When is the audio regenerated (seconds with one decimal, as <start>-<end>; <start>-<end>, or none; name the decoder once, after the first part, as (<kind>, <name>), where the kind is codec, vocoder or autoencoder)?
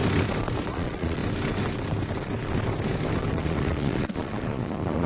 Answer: 0.7-1.2 (vocoder, Vocos); 3.3-5.1